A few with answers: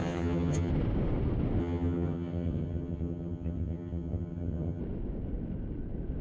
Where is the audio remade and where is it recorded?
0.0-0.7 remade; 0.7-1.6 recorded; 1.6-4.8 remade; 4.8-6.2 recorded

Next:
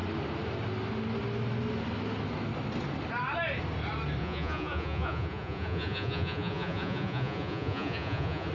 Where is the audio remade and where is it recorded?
0.0-4.2 recorded; 4.2-8.5 remade

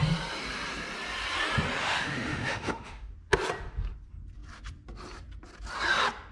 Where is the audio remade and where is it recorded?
0.0-1.8 recorded; 1.8-3.1 remade; 3.1-6.3 recorded

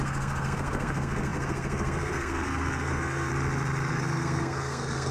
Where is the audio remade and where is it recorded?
0.0-3.3 remade; 3.3-3.9 recorded; 3.9-5.1 remade

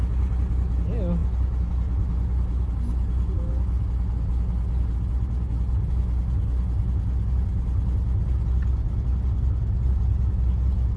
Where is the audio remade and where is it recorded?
0.0-11.0 recorded

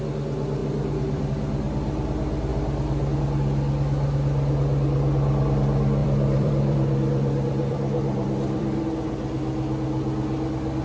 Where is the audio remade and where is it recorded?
0.0-0.6 recorded; 0.6-1.3 remade; 1.3-6.0 recorded; 6.0-8.8 remade; 8.8-10.8 recorded

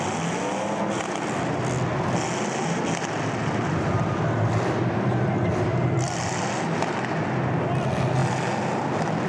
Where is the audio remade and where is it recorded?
0.0-3.4 recorded; 3.4-6.5 remade; 6.5-9.3 recorded

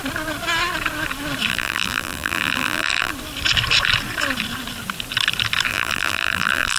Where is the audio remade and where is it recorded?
0.0-1.5 recorded; 1.5-3.1 remade; 3.1-5.7 recorded; 5.7-6.8 remade